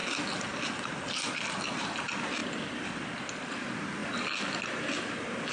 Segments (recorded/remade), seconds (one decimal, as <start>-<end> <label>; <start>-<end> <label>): 0.0-5.5 recorded